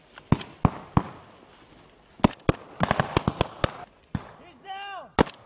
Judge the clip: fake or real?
real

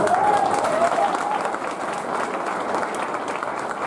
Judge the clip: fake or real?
real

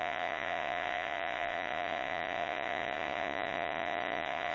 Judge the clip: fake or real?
fake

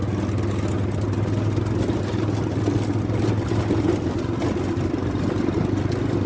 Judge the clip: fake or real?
real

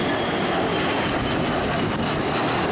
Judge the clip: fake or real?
real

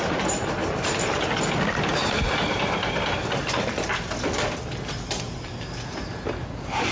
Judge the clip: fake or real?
real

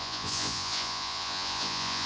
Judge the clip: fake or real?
fake